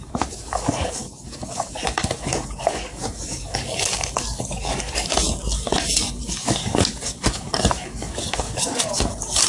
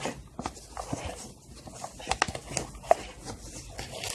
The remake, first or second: first